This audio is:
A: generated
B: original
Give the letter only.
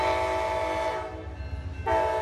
B